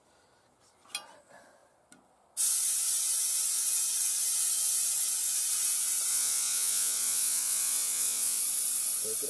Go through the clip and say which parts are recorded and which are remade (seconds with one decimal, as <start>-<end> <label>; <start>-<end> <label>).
0.0-6.1 recorded; 6.1-8.4 remade; 8.4-9.3 recorded